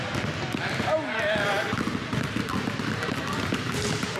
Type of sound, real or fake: real